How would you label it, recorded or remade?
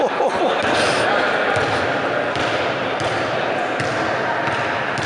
recorded